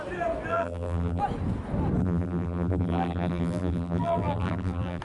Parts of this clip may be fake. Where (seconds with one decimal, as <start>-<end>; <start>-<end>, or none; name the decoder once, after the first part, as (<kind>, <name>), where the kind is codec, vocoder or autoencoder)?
0.5-1.2 (vocoder, BigVGAN v2); 2.0-5.0